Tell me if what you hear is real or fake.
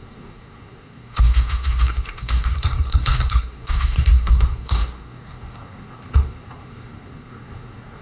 fake